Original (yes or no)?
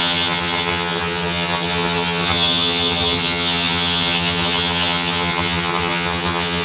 no